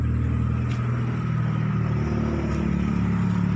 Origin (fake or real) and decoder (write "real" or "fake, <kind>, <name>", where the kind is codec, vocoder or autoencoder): real